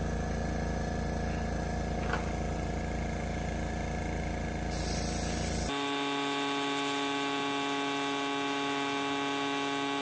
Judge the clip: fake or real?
real